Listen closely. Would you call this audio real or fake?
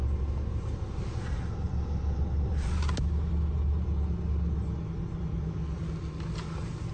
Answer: real